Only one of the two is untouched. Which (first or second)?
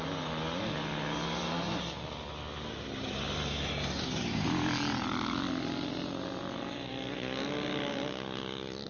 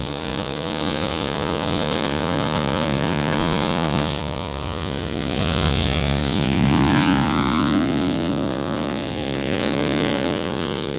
first